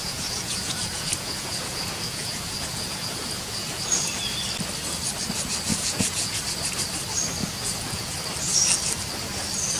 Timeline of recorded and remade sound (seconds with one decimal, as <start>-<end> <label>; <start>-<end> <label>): 0.0-4.1 remade; 4.1-5.7 recorded; 5.7-6.4 remade; 6.4-7.4 recorded; 7.4-8.1 remade; 8.1-9.8 recorded

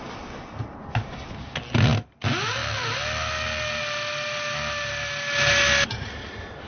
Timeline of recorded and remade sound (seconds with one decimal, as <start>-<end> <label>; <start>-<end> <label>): 0.0-6.7 recorded

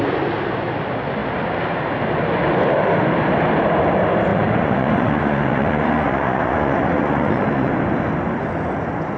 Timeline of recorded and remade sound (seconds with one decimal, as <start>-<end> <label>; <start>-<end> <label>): 0.0-4.3 recorded; 4.3-7.7 remade; 7.7-9.2 recorded

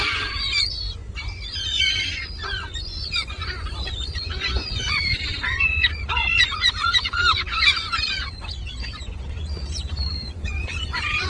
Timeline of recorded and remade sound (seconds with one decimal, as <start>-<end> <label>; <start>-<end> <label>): 0.0-11.3 remade

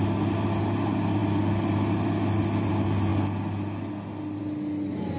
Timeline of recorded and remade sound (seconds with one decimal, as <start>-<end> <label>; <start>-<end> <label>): 0.0-5.2 recorded